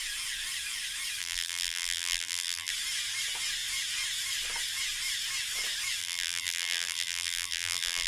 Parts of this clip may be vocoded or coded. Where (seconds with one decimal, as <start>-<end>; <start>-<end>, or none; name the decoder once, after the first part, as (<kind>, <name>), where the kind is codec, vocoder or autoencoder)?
1.2-2.7 (vocoder, BigVGAN v2); 6.0-8.1